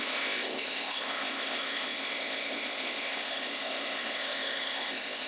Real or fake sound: fake